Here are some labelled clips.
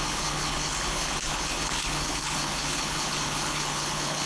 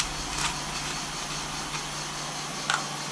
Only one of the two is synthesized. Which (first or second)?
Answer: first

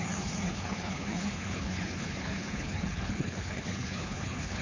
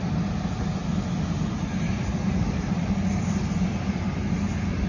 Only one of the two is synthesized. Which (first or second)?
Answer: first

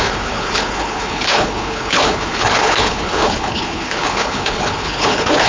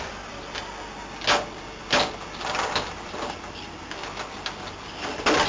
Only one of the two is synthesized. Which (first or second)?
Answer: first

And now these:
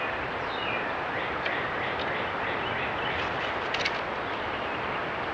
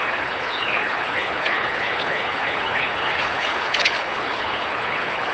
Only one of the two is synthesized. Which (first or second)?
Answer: second